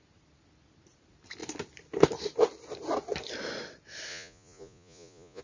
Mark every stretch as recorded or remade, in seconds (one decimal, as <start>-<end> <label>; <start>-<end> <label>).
0.0-4.1 recorded; 4.1-5.4 remade